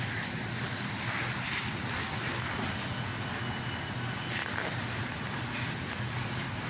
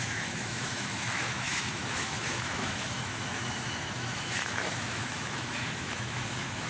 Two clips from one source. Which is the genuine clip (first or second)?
first